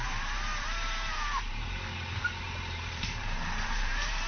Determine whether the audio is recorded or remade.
remade